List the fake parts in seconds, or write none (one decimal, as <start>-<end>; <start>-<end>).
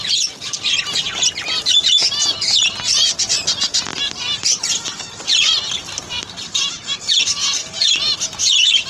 none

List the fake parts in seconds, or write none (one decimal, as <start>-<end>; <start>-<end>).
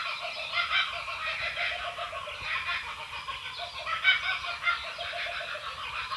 none